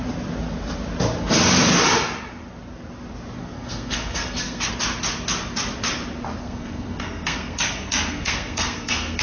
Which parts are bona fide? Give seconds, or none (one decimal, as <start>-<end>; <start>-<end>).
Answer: 0.0-3.4; 4.7-6.4